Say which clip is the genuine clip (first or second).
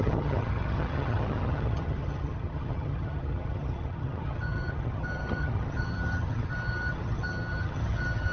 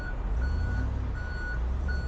second